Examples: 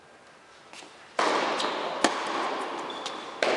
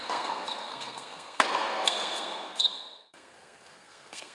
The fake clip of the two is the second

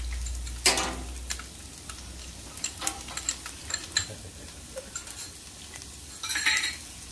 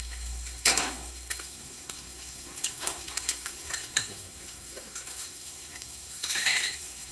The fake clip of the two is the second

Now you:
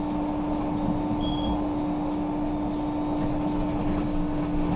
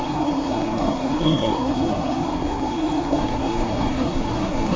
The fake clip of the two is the second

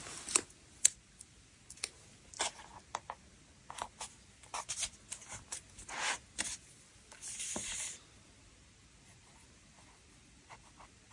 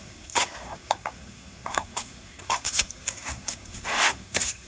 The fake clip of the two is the second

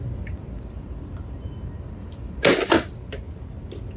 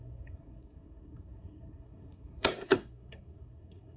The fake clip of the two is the second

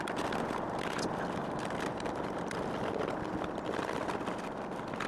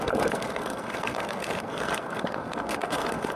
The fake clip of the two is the second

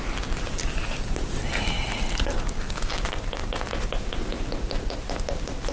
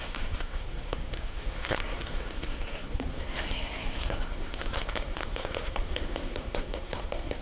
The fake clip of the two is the second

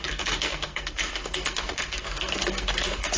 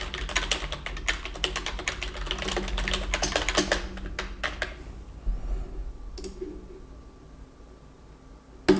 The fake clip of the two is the first